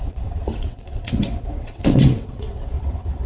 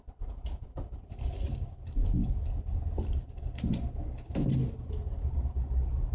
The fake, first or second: first